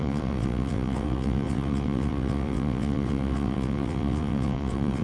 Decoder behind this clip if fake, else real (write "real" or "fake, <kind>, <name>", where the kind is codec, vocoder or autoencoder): fake, vocoder, WaveNeXt